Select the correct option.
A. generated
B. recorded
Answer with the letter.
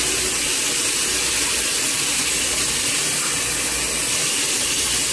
B